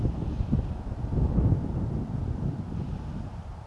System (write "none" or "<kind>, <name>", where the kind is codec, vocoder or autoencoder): none